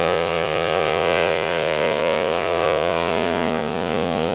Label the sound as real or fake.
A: fake